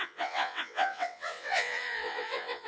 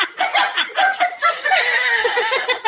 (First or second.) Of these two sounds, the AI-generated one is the first